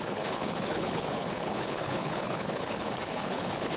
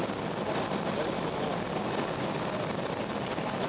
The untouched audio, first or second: second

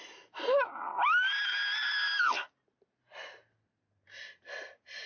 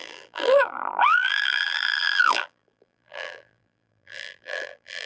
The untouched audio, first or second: first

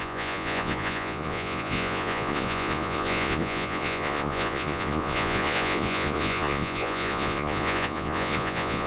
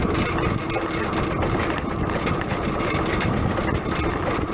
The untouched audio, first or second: second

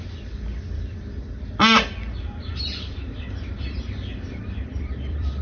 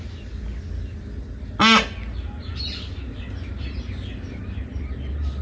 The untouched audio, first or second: second